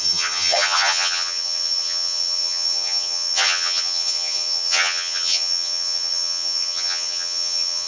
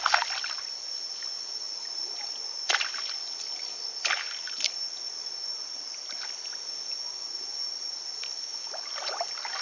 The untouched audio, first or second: second